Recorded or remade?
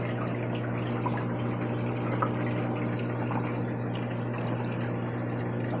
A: recorded